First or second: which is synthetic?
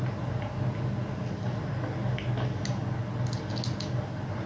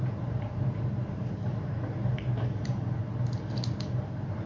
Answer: second